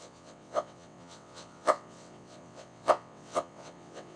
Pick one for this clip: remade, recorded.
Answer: remade